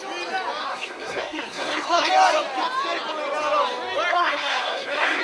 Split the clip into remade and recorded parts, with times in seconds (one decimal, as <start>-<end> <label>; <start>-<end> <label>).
0.0-0.6 recorded; 0.6-2.1 remade; 2.1-4.1 recorded; 4.1-5.2 remade